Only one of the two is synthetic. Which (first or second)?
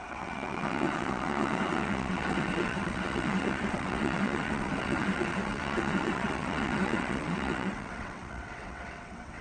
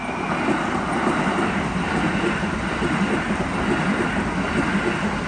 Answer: first